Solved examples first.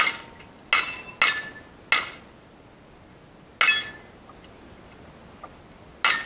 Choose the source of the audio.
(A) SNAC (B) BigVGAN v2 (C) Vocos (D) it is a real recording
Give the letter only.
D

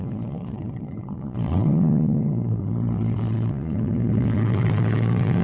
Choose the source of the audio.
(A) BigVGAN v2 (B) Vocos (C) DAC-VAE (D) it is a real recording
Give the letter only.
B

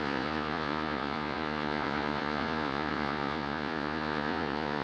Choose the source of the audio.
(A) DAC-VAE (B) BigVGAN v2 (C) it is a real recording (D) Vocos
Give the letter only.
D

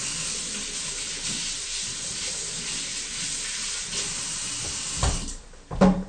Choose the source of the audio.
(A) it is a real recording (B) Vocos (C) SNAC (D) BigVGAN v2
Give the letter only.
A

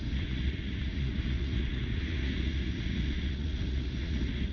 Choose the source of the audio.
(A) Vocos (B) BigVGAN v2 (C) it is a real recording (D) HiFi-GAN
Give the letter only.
A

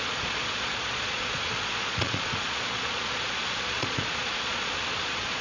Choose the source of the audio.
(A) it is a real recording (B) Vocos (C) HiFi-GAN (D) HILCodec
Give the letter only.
B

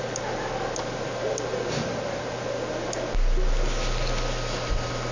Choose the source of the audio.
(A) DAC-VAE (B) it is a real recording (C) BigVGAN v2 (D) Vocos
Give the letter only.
B